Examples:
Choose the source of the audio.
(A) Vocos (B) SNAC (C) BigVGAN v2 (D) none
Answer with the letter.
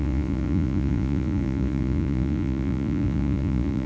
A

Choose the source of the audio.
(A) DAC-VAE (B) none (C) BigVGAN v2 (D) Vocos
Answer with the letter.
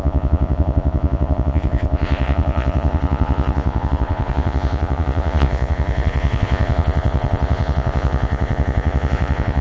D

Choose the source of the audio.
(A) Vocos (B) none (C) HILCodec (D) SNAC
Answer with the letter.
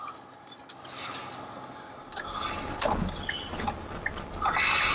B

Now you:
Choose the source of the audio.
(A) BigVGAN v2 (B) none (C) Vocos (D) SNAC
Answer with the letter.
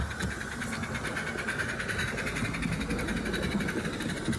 B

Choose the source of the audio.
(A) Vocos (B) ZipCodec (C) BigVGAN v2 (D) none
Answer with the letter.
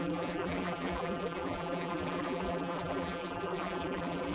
C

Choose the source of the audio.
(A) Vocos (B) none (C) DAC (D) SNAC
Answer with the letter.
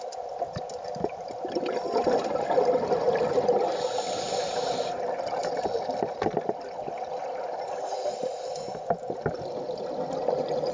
B